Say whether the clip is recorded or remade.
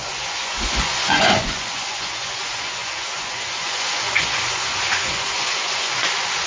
remade